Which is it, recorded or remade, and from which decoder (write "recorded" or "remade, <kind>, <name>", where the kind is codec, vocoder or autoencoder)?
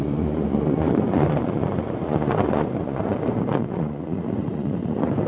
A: remade, vocoder, Vocos